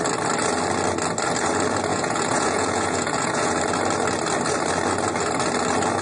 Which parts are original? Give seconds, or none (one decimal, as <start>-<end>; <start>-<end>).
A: 0.0-1.9; 3.5-6.0